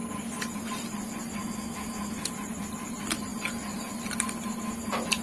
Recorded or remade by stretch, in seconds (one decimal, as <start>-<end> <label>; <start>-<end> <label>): 0.0-1.4 recorded; 1.4-2.3 remade; 2.3-5.2 recorded